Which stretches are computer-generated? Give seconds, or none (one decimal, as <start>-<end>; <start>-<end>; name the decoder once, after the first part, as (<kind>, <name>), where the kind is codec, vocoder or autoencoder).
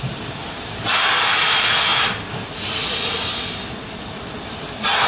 0.0-5.1 (vocoder, BigVGAN v2)